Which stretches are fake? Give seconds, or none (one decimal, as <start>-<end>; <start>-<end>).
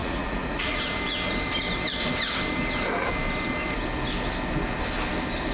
0.0-0.8